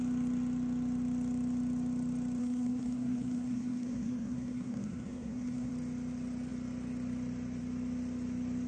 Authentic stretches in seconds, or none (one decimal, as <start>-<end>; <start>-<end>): 0.0-2.4; 5.7-8.7